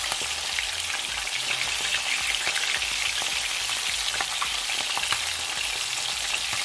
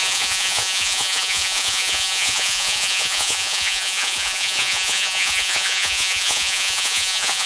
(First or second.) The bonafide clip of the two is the first